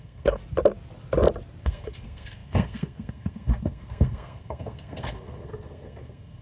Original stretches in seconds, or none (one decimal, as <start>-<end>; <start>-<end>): 0.4-1.6